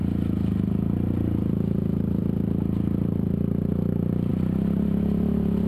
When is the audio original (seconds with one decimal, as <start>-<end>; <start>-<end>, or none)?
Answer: none